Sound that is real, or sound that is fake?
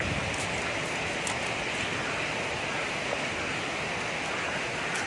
real